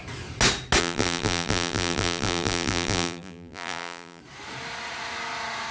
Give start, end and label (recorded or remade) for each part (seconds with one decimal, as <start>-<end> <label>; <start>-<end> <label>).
0.0-0.8 recorded; 0.8-4.2 remade; 4.2-5.7 recorded